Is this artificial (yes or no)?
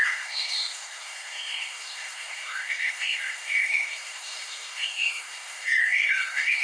yes